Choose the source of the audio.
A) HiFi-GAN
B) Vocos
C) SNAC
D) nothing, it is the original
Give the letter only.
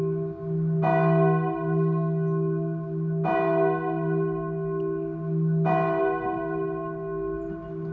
D